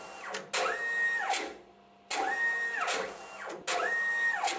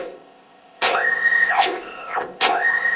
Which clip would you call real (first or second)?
first